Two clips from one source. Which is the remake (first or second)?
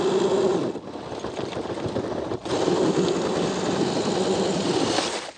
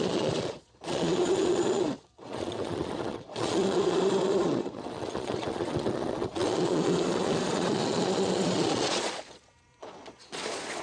second